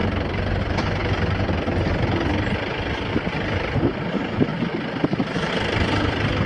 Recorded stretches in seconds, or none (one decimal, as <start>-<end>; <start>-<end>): 0.0-0.6; 1.0-3.9